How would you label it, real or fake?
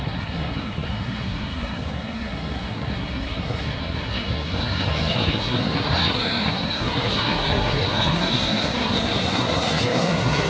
fake